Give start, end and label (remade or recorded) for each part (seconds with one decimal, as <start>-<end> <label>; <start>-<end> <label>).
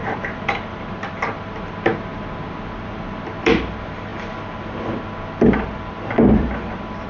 0.0-7.1 remade